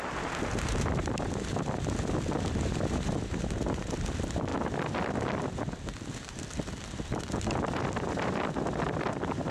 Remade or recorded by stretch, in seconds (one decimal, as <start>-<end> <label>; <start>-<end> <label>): 0.0-9.5 recorded